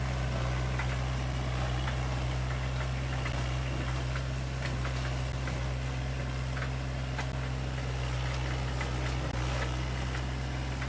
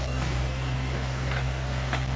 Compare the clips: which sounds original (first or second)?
first